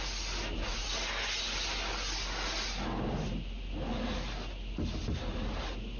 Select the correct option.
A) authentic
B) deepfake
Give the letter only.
A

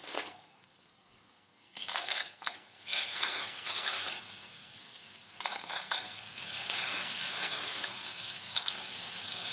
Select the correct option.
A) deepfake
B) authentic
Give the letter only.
A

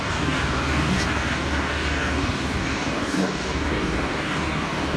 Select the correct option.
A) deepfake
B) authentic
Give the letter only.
A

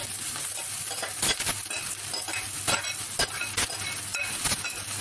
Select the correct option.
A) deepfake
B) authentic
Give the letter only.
B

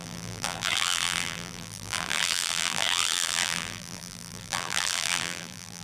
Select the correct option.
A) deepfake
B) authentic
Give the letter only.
A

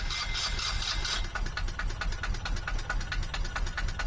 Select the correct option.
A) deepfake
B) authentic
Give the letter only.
B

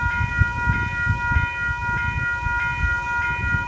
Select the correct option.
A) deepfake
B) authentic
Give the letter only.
B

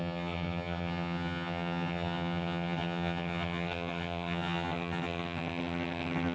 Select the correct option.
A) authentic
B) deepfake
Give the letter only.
B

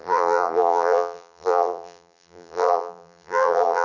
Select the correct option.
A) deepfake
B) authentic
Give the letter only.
A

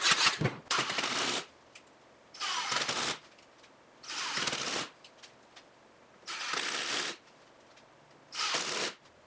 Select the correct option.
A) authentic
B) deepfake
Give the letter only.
A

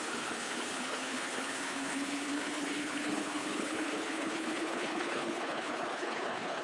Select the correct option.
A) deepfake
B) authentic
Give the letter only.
A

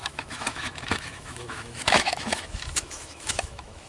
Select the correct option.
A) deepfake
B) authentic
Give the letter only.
A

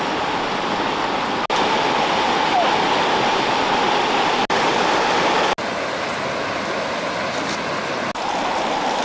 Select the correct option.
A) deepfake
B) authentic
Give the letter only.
B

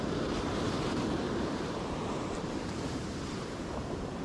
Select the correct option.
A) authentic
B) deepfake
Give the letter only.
B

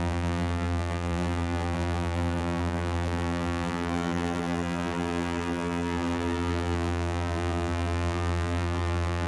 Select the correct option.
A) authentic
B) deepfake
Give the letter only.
B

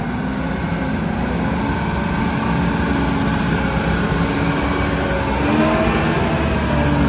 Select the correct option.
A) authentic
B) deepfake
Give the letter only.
A